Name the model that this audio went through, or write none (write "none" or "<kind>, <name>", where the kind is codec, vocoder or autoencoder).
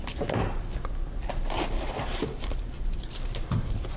vocoder, BigVGAN v2